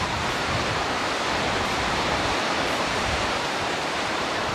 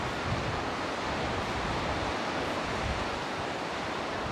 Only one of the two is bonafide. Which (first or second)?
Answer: second